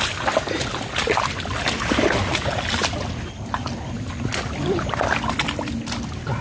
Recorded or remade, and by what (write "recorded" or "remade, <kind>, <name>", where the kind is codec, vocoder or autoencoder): recorded